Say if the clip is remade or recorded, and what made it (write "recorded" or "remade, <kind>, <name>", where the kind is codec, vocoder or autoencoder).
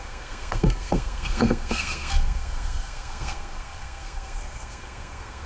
remade, codec, SNAC